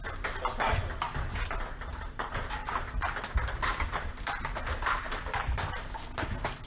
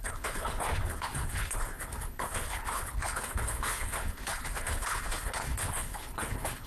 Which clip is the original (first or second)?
first